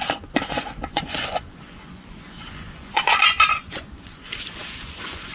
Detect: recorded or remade remade